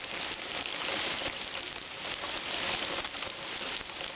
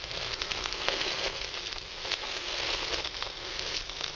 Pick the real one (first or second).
first